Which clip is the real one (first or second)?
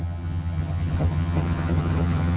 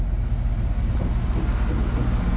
second